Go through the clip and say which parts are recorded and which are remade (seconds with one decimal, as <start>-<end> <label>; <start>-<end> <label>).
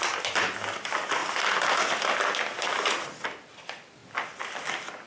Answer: 0.0-5.1 recorded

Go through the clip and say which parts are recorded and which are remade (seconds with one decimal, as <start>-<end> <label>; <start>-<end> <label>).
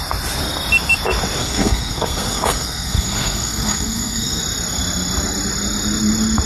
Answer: 0.0-1.4 recorded; 1.4-4.4 remade; 4.4-6.5 recorded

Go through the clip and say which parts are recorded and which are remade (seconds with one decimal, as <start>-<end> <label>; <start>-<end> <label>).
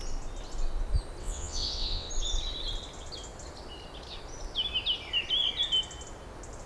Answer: 0.0-1.2 recorded; 1.2-2.1 remade; 2.1-6.7 recorded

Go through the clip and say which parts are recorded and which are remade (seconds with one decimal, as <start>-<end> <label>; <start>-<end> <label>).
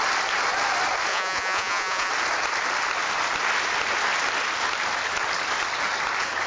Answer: 0.0-1.1 recorded; 1.1-2.1 remade; 2.1-6.5 recorded